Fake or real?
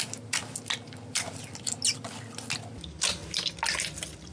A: real